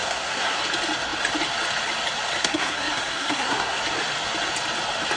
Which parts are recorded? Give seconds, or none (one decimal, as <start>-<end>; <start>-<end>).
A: 0.6-2.4; 3.8-5.2